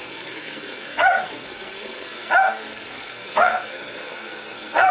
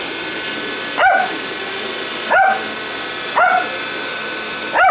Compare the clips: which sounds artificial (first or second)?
first